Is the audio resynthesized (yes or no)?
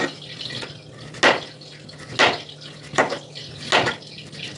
no